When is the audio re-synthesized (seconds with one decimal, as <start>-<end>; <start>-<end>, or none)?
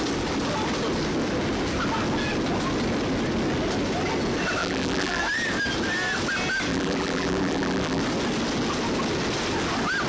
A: 4.6-5.2; 6.7-8.0